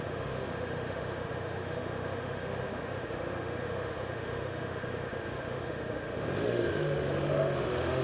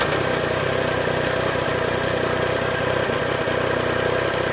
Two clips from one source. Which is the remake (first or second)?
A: first